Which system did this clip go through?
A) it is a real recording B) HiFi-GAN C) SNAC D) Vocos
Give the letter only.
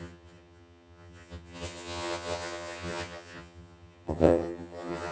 B